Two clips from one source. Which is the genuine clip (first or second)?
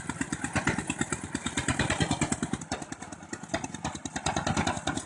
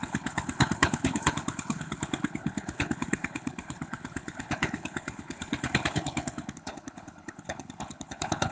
first